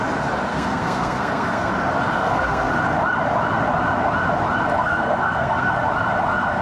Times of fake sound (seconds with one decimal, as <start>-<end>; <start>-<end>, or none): 0.5-1.7; 2.2-2.7; 4.8-5.7